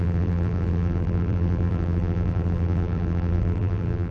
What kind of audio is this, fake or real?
fake